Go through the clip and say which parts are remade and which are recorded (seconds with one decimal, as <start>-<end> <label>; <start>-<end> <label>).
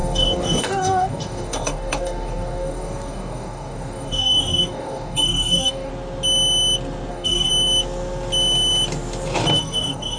0.0-5.9 remade; 5.9-7.1 recorded; 7.1-7.5 remade; 7.5-9.6 recorded; 9.6-10.2 remade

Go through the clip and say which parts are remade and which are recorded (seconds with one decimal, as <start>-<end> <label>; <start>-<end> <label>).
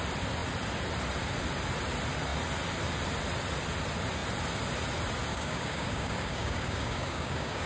0.0-5.3 recorded; 5.3-7.7 remade